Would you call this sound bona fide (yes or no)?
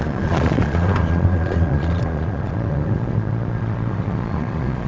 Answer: no